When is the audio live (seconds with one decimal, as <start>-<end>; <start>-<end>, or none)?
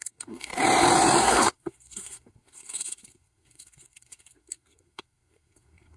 0.5-1.2